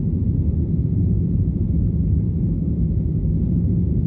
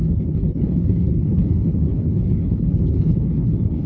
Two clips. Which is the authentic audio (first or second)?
first